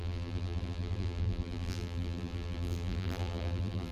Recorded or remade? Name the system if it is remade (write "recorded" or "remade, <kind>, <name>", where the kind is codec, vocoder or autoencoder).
remade, vocoder, BigVGAN v2